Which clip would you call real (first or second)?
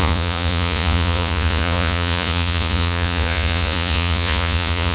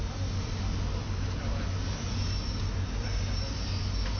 second